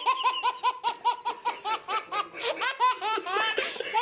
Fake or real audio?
real